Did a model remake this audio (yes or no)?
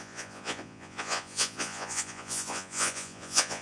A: yes